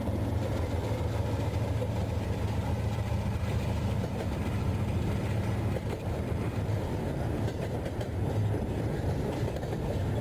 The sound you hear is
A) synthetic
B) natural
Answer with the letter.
A